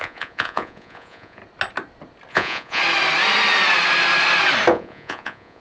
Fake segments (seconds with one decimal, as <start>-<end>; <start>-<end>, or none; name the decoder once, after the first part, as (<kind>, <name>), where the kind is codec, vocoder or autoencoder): 0.0-1.4 (vocoder, Vocos); 2.3-2.8; 4.7-5.6